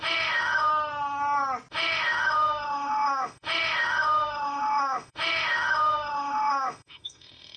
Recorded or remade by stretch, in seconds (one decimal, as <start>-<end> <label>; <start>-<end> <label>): 0.0-0.7 remade; 0.7-1.7 recorded; 1.7-7.6 remade